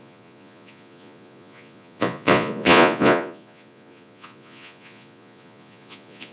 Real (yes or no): no